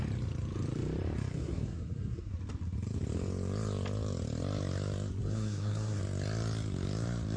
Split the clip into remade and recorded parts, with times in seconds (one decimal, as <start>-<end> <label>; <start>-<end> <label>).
0.0-1.3 recorded; 1.3-2.3 remade; 2.3-5.2 recorded; 5.2-6.0 remade; 6.0-7.4 recorded